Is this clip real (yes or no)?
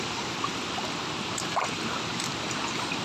yes